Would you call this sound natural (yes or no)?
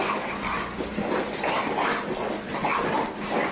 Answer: yes